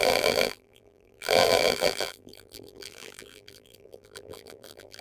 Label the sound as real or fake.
fake